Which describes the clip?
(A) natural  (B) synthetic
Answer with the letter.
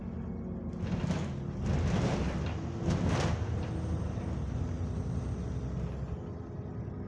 A